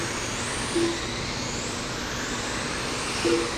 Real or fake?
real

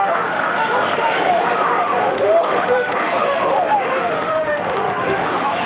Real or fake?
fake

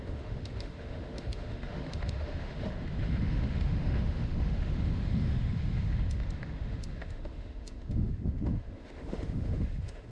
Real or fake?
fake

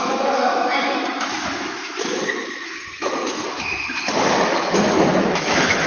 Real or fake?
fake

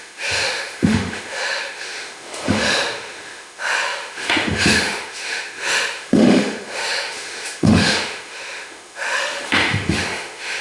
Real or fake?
fake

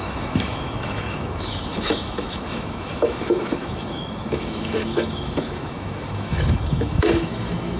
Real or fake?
fake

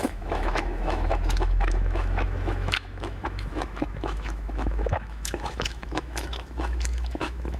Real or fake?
fake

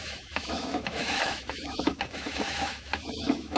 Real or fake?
fake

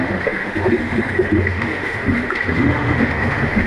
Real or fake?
fake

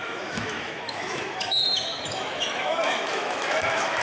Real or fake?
fake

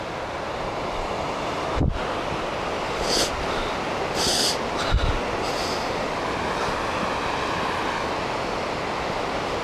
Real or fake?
real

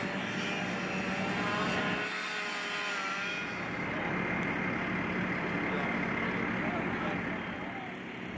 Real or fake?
real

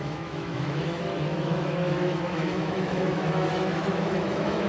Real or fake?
fake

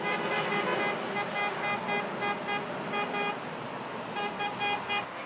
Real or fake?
real